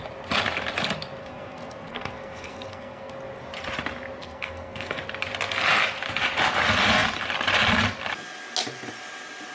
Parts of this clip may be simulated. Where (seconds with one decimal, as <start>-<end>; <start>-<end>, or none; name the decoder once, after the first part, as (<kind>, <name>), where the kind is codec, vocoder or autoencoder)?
1.2-3.1 (codec, SNAC); 4.2-5.0